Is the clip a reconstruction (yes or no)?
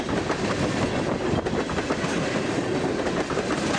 no